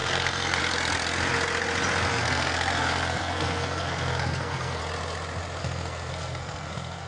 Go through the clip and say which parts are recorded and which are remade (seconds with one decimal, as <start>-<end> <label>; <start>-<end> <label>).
0.0-0.6 remade; 0.6-2.1 recorded; 2.1-4.8 remade; 4.8-5.6 recorded; 5.6-7.1 remade